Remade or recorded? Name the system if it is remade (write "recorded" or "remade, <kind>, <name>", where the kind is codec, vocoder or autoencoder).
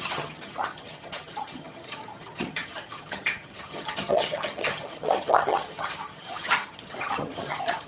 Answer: remade, vocoder, HiFi-GAN